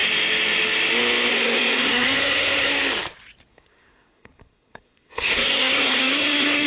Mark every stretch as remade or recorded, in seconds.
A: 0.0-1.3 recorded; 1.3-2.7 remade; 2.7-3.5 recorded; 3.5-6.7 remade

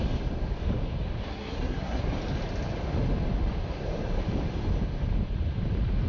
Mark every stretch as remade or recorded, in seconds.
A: 0.0-1.3 recorded; 1.3-2.0 remade; 2.0-6.1 recorded